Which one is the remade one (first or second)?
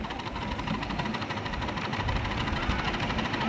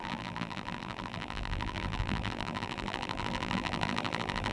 second